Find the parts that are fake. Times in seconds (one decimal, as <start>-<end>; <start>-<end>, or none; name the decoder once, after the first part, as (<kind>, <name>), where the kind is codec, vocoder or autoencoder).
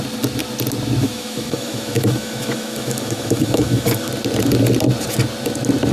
1.0-4.1 (autoencoder, DAC-VAE)